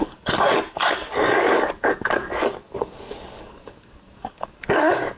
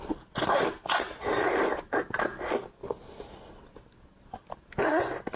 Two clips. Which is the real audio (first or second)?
second